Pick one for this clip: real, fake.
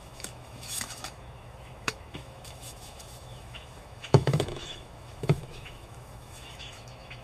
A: fake